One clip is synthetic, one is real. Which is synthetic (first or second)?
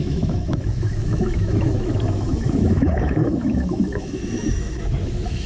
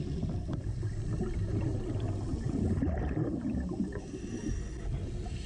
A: first